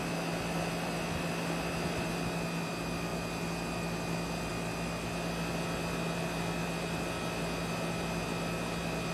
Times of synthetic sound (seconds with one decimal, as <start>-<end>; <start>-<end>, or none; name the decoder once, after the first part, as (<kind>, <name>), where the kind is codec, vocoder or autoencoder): none

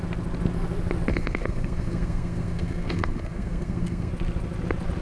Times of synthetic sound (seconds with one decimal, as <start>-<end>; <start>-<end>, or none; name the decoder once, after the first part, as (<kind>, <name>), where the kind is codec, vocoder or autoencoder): 1.1-4.1 (codec, SNAC)

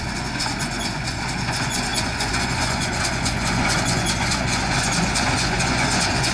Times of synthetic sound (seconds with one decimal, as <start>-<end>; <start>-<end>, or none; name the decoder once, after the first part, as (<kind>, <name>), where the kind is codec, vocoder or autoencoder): 0.0-6.3 (vocoder, Vocos)

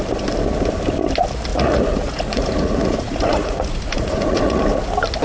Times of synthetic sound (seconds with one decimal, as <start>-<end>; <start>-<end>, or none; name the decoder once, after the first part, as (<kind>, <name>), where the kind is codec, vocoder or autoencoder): 1.5-4.6 (vocoder, Vocos)

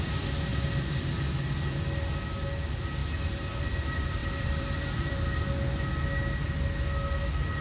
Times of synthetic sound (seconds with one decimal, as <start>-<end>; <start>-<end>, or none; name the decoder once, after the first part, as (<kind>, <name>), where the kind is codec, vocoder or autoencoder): 3.0-3.7 (vocoder, BigVGAN v2); 4.2-5.4

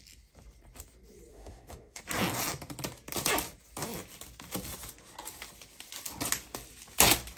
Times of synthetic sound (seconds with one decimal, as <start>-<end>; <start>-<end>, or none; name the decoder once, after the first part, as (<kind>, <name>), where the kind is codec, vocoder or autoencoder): 1.3-2.0 (autoencoder, DAC-VAE)